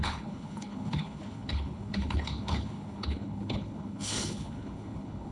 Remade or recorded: remade